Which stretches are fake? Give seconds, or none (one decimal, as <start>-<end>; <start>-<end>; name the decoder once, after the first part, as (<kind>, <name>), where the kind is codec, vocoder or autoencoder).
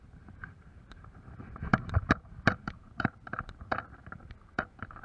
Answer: 0.0-5.0 (vocoder, BigVGAN v2)